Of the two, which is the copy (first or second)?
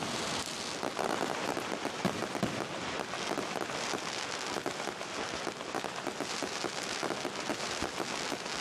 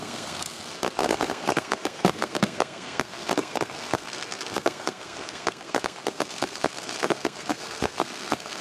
second